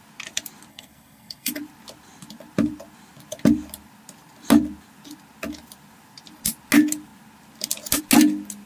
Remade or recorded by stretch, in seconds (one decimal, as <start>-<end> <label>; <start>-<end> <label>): 0.0-0.7 recorded; 0.7-1.5 remade; 1.5-8.7 recorded